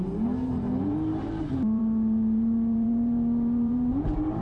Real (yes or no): no